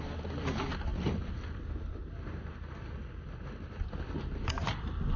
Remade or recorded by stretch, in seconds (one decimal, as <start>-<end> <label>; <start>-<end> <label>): 0.0-5.2 recorded